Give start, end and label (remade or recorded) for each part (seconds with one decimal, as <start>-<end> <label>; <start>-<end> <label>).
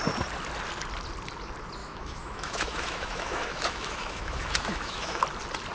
0.0-1.8 recorded; 1.8-5.2 remade; 5.2-5.7 recorded